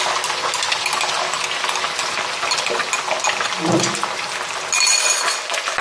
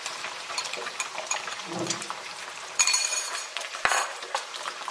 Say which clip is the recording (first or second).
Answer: first